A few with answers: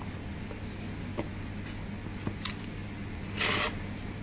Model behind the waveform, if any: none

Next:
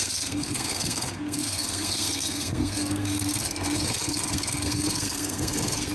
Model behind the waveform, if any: codec, SNAC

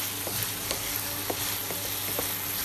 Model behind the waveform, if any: none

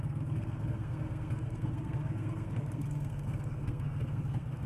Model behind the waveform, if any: codec, SNAC